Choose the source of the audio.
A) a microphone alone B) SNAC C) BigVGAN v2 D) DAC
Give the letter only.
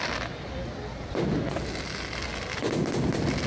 A